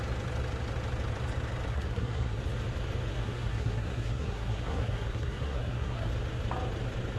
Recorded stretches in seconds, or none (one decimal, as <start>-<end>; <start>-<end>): 0.0-1.7; 2.4-3.1; 6.1-7.2